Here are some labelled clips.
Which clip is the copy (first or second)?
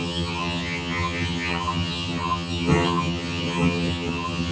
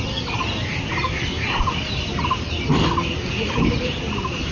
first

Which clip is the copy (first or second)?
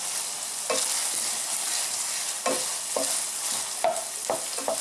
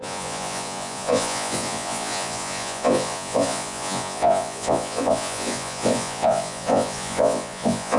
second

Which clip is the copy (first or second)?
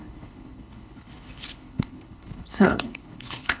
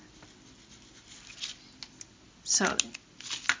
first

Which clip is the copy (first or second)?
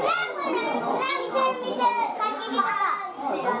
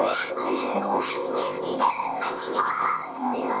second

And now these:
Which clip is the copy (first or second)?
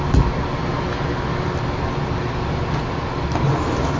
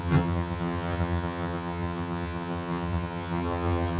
second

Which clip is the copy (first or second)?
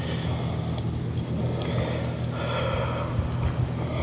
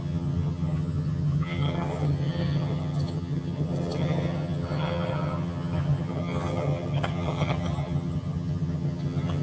second